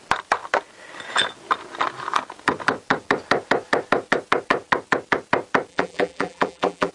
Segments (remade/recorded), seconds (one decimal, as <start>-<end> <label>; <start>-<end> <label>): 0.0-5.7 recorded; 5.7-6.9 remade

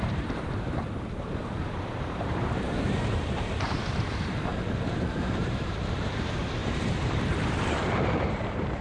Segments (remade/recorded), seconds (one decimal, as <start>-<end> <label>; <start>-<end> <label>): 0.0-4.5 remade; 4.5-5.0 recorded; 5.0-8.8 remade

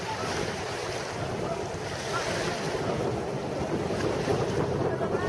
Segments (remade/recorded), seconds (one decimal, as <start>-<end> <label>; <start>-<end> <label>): 0.0-0.8 remade; 0.8-3.9 recorded; 3.9-5.3 remade

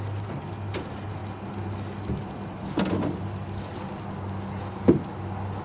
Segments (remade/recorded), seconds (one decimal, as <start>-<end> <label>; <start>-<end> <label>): 0.0-5.6 recorded

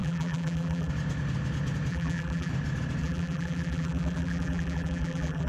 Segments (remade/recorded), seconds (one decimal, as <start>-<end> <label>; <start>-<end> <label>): 0.0-0.9 remade; 0.9-1.9 recorded; 1.9-2.5 remade; 2.5-3.0 recorded; 3.0-5.5 remade

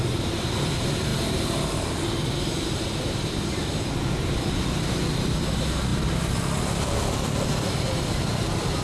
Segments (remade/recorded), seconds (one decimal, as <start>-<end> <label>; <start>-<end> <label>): 0.0-1.1 remade; 1.1-2.1 recorded; 2.1-5.9 remade; 5.9-6.6 recorded; 6.6-8.8 remade